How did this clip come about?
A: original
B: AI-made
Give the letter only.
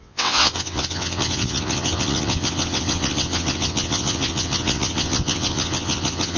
B